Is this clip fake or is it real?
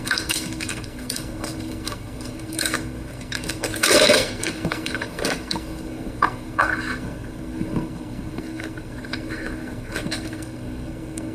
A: fake